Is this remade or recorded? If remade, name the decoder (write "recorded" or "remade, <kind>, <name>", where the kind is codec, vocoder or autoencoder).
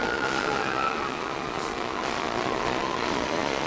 remade, vocoder, Vocos